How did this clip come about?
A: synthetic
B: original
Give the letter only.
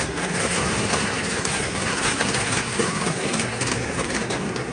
A